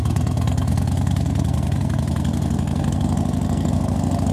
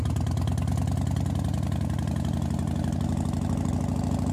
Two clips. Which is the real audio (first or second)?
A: second